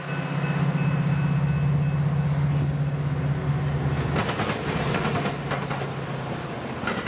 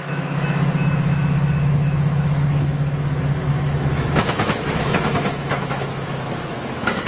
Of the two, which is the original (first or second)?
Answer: first